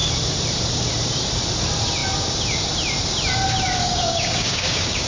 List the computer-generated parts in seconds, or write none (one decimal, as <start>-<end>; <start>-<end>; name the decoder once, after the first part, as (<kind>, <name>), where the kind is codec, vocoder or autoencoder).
3.8-5.1 (codec, DAC)